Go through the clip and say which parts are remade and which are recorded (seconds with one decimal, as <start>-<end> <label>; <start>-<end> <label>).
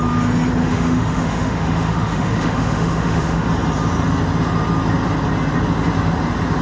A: 0.0-0.6 recorded; 0.6-3.5 remade; 3.5-6.6 recorded